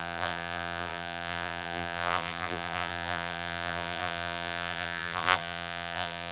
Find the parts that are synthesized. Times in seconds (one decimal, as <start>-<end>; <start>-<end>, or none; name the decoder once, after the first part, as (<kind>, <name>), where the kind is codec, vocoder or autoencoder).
0.0-6.3 (vocoder, BigVGAN v2)